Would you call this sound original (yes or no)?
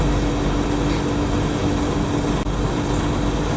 yes